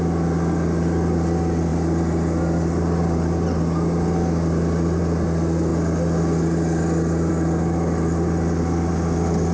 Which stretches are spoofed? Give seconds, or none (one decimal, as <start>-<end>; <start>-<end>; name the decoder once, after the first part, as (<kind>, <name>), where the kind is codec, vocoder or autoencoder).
none